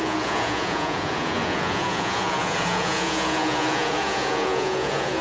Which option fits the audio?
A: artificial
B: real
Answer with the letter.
A